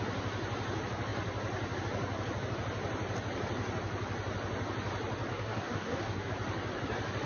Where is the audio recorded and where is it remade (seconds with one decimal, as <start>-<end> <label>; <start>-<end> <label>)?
0.0-5.3 recorded; 5.3-6.3 remade; 6.3-7.3 recorded